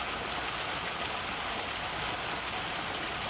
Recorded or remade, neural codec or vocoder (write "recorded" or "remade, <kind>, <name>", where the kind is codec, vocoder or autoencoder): recorded